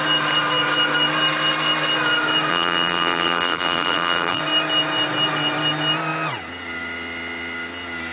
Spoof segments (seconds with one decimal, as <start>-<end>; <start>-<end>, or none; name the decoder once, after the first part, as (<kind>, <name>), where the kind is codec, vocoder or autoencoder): 2.5-4.4 (vocoder, BigVGAN v2)